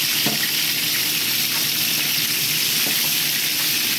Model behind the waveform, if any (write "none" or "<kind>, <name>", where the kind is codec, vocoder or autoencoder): none